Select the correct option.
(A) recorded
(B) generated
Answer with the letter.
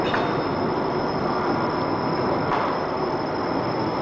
A